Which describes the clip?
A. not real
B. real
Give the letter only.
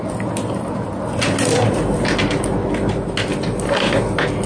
B